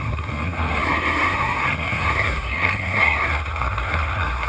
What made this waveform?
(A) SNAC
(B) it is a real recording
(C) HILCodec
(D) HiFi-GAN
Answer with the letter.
A